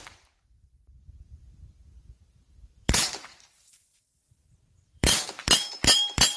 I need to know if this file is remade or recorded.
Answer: remade